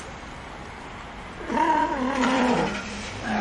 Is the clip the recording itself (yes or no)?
no